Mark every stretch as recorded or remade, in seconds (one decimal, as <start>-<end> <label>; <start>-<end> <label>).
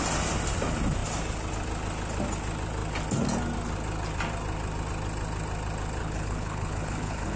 0.0-6.0 recorded; 6.0-7.4 remade